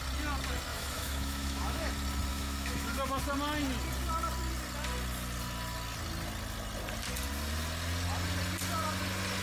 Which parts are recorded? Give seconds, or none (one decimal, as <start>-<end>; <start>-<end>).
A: 0.0-0.7; 1.9-2.3; 3.2-9.4